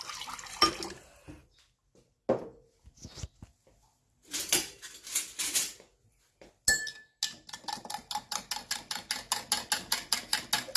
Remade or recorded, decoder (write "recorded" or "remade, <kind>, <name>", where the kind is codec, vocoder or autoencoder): recorded